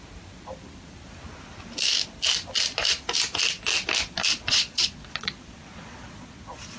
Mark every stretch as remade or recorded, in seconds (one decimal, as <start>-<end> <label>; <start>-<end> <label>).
0.0-4.5 recorded; 4.5-6.8 remade